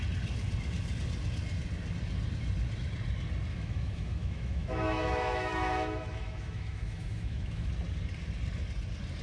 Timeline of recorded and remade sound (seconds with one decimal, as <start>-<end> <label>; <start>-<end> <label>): 0.0-3.5 recorded; 3.5-7.7 remade; 7.7-9.2 recorded